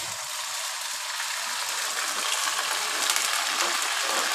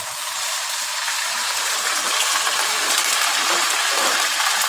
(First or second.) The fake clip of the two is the second